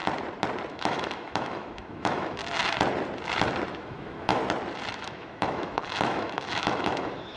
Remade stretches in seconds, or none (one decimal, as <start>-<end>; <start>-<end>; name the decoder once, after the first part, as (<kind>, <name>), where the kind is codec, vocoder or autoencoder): 0.7-2.4 (autoencoder, DAC-VAE); 3.7-4.4; 4.9-7.4